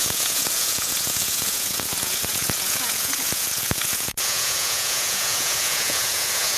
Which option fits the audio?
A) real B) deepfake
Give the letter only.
B